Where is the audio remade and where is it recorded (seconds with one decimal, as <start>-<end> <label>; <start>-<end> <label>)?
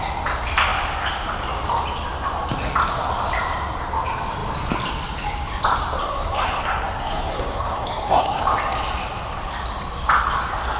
0.0-6.0 recorded; 6.0-8.4 remade; 8.4-10.8 recorded